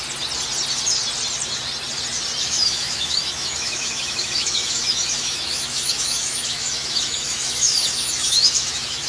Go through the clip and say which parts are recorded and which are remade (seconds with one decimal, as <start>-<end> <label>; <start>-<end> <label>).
0.0-2.4 recorded; 2.4-9.1 remade